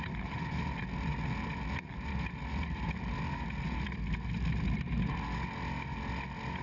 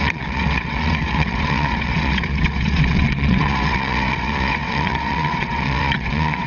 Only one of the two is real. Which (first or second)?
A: first